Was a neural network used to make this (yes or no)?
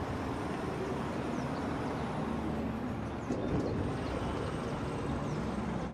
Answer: no